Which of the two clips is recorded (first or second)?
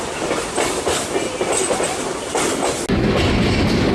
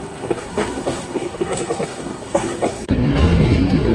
first